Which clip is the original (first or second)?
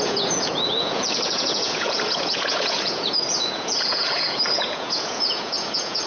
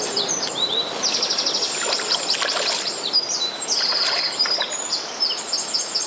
second